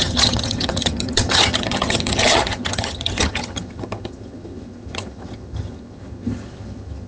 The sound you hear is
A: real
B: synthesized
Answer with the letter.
B